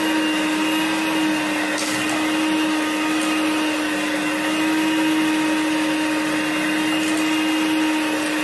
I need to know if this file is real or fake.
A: real